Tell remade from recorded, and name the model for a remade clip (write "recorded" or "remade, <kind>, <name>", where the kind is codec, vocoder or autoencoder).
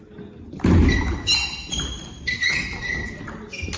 recorded